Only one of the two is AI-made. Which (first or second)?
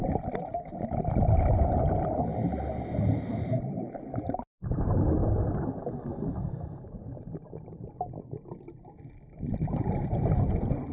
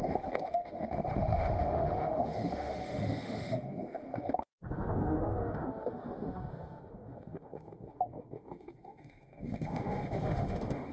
second